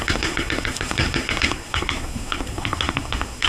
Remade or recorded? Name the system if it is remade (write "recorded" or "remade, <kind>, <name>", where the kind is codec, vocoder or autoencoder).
remade, codec, SNAC